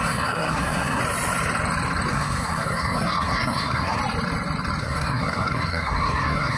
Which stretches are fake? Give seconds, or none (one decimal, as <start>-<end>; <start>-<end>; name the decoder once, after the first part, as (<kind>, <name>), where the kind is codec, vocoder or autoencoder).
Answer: 0.0-1.0 (codec, SNAC); 2.1-4.0; 4.8-6.6